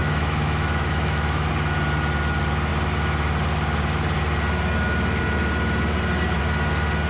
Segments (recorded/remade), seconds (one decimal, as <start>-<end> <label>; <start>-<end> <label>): 0.0-1.5 remade; 1.5-7.1 recorded